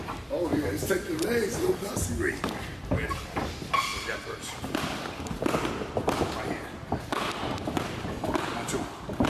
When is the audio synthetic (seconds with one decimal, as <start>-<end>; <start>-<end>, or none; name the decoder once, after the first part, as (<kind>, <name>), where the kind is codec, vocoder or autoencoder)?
0.5-1.9 (vocoder, BigVGAN v2)